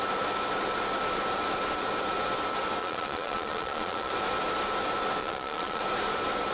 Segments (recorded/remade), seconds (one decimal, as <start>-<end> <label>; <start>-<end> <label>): 0.0-2.8 recorded; 2.8-4.1 remade; 4.1-5.2 recorded; 5.2-5.8 remade; 5.8-6.5 recorded